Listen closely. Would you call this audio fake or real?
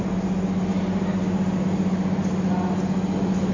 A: real